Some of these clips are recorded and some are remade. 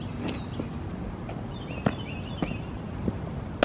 recorded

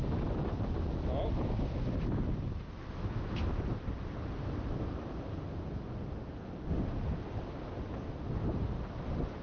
recorded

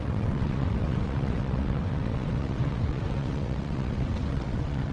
remade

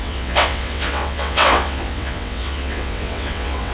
remade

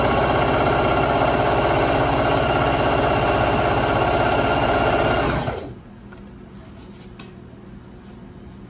recorded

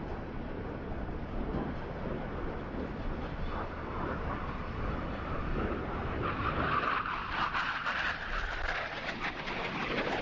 recorded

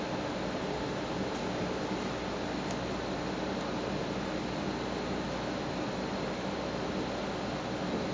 recorded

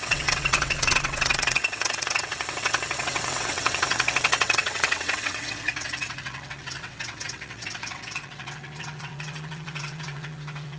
remade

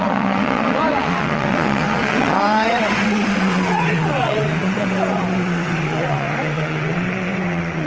remade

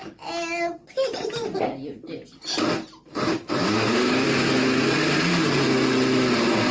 recorded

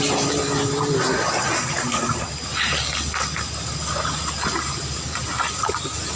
recorded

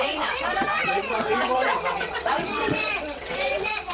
remade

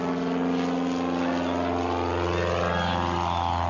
recorded